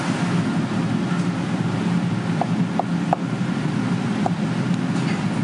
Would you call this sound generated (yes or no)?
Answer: no